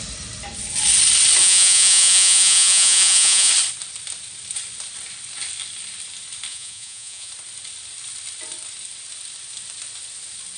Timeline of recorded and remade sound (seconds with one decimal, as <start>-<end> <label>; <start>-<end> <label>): 0.0-1.4 recorded; 1.4-3.5 remade; 3.5-6.5 recorded; 6.5-7.3 remade; 7.3-10.6 recorded

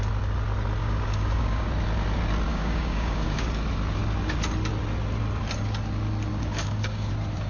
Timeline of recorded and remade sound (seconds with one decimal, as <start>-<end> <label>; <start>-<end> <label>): 0.0-0.8 recorded; 0.8-1.7 remade; 1.7-2.5 recorded; 2.5-3.6 remade; 3.6-6.3 recorded; 6.3-7.1 remade; 7.1-7.5 recorded